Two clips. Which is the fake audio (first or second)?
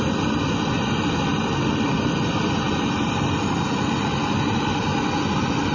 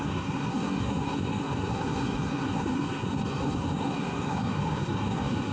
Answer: second